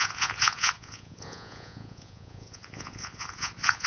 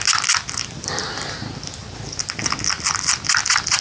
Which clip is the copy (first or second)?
first